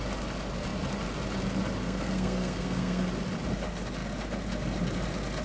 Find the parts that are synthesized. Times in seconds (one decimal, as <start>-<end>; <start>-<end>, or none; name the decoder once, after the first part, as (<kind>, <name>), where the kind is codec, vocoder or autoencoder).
1.8-3.1 (codec, SNAC)